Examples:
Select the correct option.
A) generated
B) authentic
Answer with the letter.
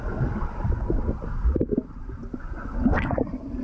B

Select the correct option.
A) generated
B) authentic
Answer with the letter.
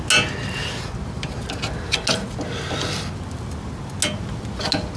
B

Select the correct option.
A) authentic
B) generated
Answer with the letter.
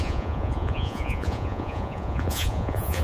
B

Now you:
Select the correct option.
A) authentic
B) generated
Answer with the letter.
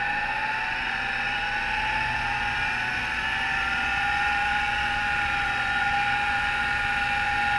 B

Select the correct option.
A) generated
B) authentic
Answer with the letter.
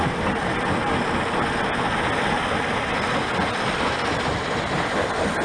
B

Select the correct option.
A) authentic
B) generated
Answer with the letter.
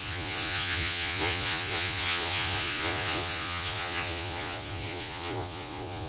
B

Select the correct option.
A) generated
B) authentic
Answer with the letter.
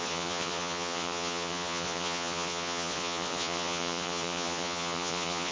A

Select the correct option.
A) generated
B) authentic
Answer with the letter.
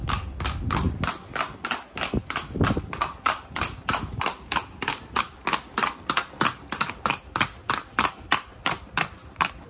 B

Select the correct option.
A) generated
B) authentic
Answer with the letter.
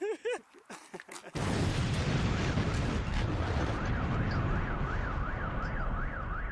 B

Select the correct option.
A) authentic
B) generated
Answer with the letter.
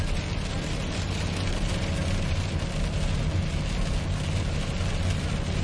A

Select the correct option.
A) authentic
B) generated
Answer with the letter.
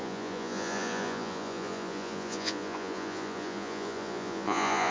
B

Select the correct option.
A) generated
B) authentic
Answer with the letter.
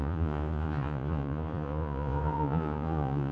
A